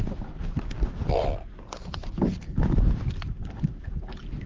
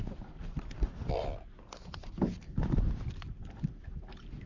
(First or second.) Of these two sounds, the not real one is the first